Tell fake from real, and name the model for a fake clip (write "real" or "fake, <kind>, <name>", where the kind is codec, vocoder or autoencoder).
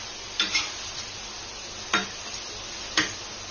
real